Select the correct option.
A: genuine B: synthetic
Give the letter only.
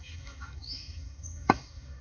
B